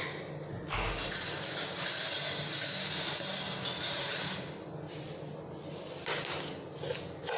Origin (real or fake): real